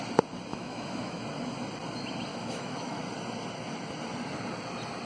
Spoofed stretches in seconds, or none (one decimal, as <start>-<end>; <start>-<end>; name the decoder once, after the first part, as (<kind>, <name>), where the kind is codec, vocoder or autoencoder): 0.5-1.2 (autoencoder, DAC-VAE); 2.3-3.0